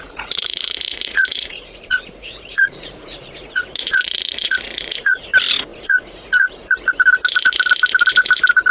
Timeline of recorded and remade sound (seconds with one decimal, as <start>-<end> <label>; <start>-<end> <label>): 0.0-5.2 remade; 5.2-5.7 recorded; 5.7-7.0 remade; 7.0-8.7 recorded